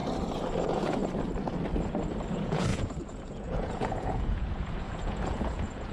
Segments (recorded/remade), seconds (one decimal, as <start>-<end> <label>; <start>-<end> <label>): 0.0-0.6 recorded; 0.6-1.0 remade; 1.0-2.3 recorded; 2.3-5.9 remade